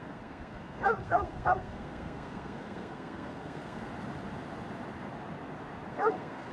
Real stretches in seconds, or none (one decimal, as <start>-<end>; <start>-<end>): 3.9-5.9